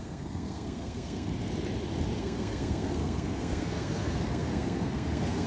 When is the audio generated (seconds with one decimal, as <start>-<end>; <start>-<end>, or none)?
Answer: 0.0-1.3; 2.2-5.5